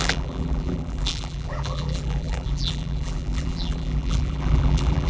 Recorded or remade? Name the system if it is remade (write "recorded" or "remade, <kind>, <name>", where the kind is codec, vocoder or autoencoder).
remade, vocoder, BigVGAN v2